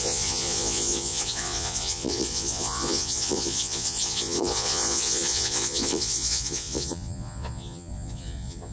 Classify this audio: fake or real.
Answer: fake